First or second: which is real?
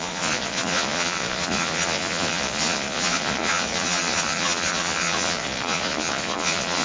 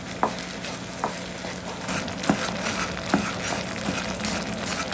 second